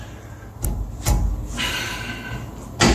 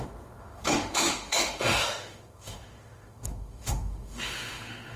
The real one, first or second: first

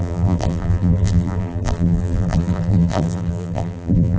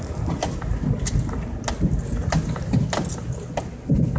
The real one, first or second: second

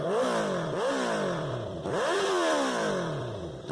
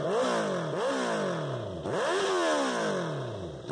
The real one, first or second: second